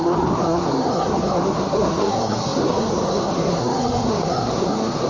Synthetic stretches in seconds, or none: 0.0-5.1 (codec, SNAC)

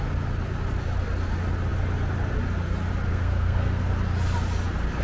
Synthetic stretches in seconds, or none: 3.1-3.9 (codec, SNAC)

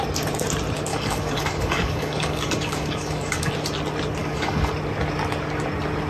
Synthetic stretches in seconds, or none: 0.9-3.5 (codec, DAC); 4.2-4.7

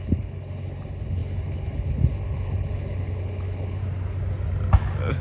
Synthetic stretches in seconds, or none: 0.0-3.8 (codec, HILCodec)

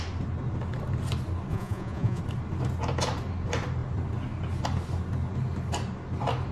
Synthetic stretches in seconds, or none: 1.5-2.2 (vocoder, Vocos)

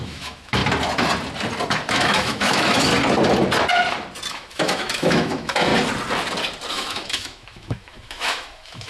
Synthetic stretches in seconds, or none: 0.0-0.6 (autoencoder, DAC-VAE); 1.9-2.9; 4.3-5.7; 6.7-8.9

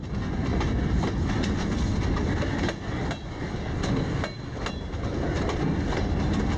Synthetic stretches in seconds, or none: none

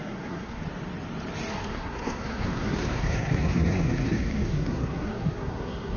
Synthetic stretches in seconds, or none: 0.0-0.6 (codec, SNAC); 1.5-6.0